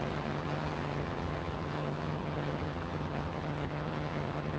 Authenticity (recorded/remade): remade